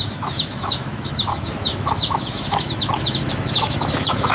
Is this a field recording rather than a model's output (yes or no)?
no